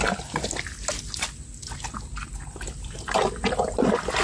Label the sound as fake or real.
real